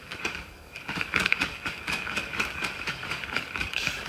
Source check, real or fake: fake